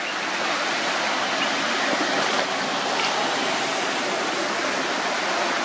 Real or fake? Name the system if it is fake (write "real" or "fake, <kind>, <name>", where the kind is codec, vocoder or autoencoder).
real